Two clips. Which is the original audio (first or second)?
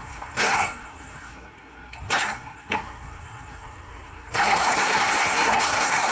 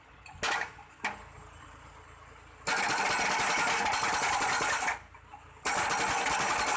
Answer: second